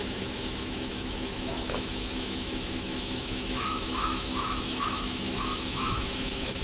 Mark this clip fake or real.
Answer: fake